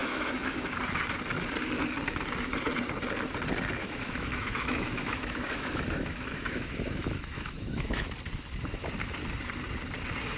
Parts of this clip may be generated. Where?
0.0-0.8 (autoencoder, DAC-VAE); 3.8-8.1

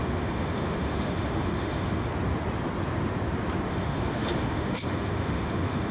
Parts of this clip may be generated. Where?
0.0-2.1 (autoencoder, DAC-VAE); 3.7-5.9

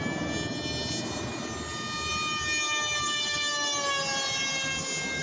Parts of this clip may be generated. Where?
none